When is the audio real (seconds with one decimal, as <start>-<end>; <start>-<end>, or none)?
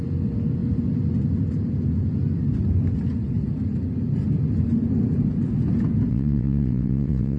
0.0-6.1